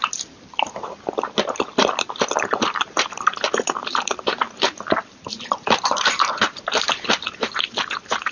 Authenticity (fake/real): fake